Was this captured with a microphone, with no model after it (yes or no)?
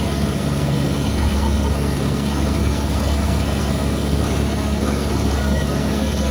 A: no